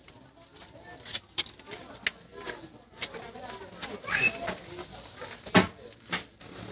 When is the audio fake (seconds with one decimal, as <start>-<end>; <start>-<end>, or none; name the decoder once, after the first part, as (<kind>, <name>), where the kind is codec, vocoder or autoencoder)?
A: 1.1-1.8 (vocoder, BigVGAN v2)